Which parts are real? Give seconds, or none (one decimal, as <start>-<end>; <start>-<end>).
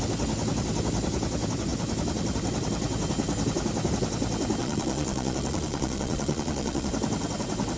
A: 0.0-4.6; 6.9-7.8